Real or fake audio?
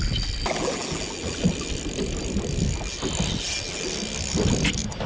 real